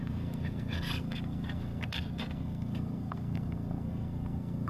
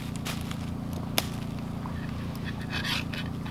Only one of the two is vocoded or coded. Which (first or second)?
first